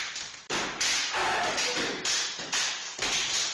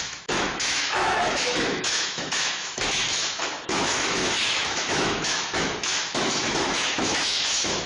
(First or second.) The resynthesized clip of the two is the second